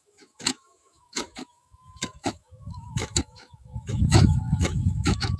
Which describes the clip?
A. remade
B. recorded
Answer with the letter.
A